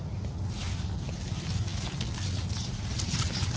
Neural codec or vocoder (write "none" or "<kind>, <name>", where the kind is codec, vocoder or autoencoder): none